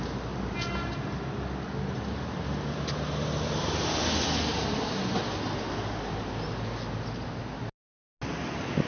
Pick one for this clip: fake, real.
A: real